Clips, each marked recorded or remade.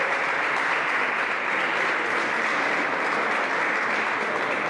recorded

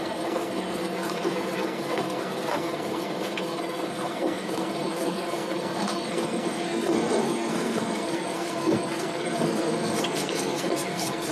remade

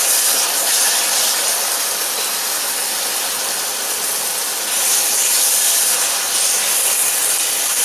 recorded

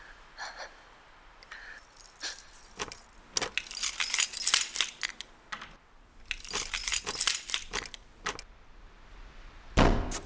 recorded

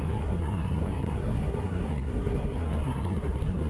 remade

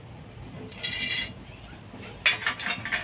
recorded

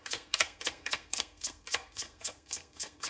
remade